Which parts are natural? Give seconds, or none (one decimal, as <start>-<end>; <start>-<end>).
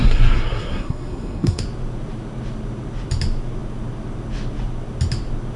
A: 1.6-5.6